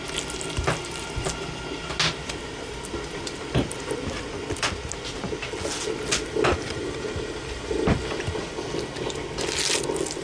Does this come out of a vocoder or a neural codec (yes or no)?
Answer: no